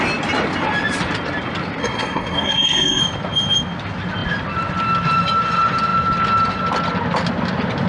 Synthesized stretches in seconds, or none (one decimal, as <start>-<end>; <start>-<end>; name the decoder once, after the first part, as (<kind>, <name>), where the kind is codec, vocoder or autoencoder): 1.8-3.0 (codec, SNAC)